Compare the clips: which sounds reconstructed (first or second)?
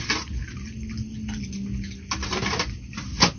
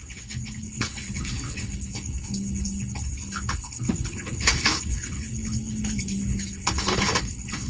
second